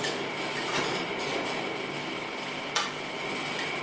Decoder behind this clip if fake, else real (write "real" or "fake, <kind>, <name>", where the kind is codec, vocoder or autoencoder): real